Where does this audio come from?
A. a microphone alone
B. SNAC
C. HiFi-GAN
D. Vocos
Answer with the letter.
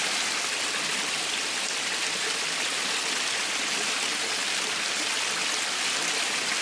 A